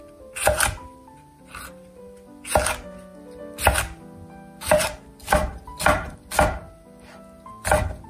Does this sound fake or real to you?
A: real